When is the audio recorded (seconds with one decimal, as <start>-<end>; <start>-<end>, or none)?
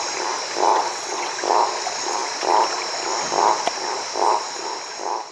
0.0-0.7; 1.3-5.3